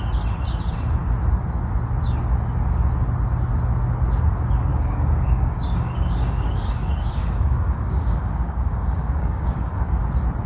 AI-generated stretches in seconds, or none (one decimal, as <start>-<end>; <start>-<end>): 4.7-9.9